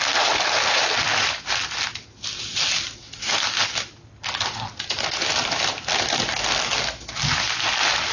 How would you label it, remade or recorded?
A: recorded